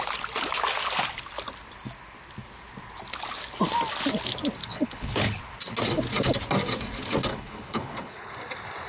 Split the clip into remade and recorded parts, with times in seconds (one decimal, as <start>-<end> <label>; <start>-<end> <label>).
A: 0.0-4.6 recorded; 4.6-5.4 remade; 5.4-7.3 recorded; 7.3-8.3 remade; 8.3-8.9 recorded